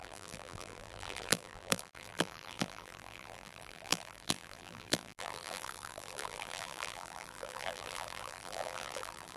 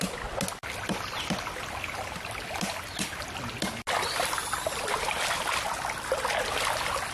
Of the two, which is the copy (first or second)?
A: first